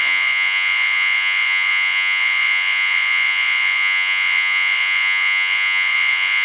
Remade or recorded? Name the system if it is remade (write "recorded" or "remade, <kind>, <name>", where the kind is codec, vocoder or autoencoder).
remade, vocoder, Vocos